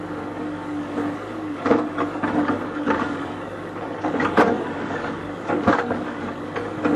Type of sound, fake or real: fake